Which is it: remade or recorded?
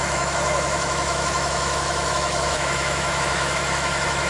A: remade